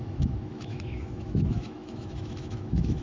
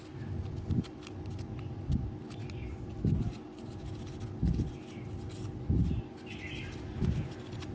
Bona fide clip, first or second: second